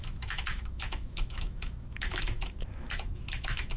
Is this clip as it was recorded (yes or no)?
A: no